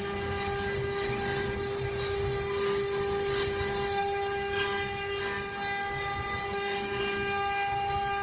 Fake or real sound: real